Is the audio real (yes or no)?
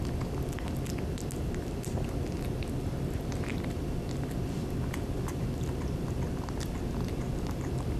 yes